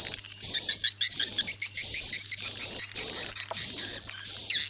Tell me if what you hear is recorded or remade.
recorded